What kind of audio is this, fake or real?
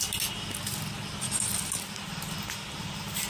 real